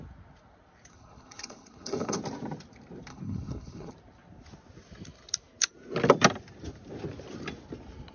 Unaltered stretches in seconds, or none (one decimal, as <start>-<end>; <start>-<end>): 0.0-0.9; 2.2-3.1; 3.9-8.1